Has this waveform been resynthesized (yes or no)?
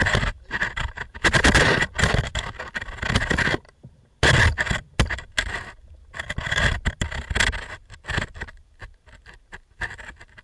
no